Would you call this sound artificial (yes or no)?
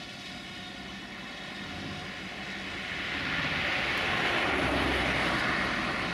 no